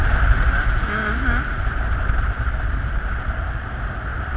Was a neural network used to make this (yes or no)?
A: no